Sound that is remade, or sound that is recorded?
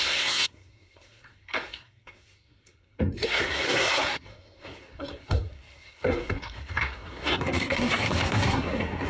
remade